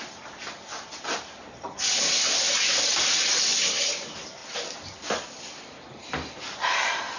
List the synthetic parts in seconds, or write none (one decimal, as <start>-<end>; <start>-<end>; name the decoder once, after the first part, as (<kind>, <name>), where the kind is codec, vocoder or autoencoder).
none